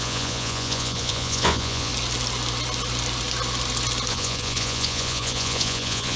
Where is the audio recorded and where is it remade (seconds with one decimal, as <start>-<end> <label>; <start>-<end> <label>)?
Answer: 0.0-1.9 remade; 1.9-4.1 recorded; 4.1-6.2 remade